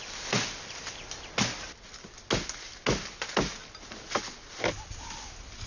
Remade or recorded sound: recorded